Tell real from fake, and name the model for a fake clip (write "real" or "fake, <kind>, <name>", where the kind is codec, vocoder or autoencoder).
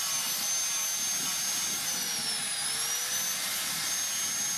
real